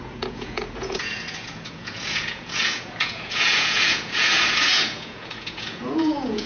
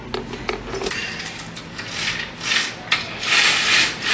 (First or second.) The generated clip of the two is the first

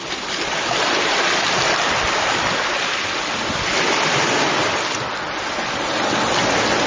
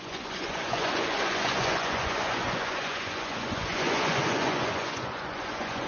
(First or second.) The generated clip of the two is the second